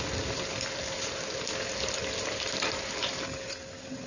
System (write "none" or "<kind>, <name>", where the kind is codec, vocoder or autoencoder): none